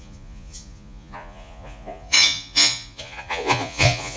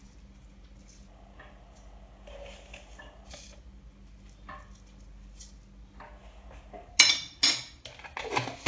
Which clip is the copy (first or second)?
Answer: first